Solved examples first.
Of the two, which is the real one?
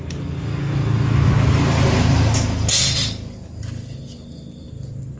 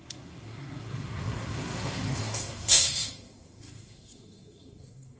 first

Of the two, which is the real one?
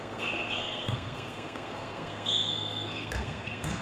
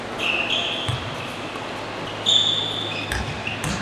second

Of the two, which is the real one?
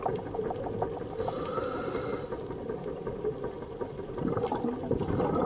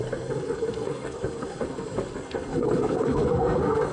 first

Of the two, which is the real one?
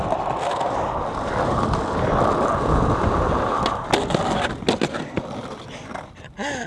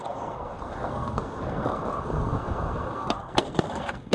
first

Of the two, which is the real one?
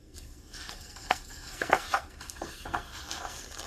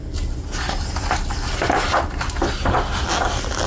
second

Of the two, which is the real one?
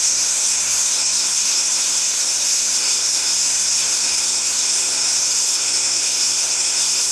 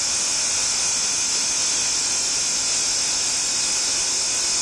second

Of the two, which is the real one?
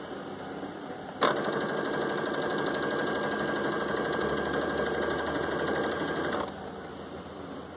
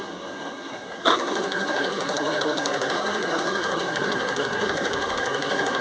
first